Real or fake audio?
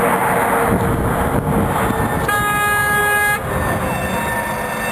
real